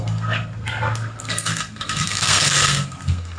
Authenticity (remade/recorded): remade